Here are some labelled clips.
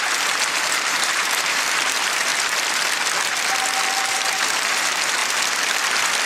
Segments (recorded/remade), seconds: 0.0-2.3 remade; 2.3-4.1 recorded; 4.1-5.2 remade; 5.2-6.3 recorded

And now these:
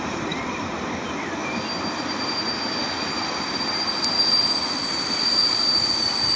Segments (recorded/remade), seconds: 0.0-6.4 remade

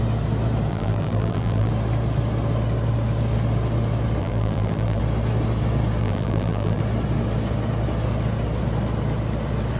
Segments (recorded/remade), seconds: 0.0-0.7 recorded; 0.7-1.7 remade; 1.7-4.2 recorded; 4.2-5.0 remade; 5.0-6.0 recorded; 6.0-6.8 remade; 6.8-9.8 recorded

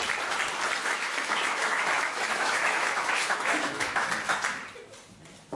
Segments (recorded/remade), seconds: 0.0-0.8 recorded; 0.8-4.1 remade; 4.1-5.5 recorded